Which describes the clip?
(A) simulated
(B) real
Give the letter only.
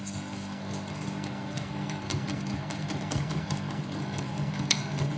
A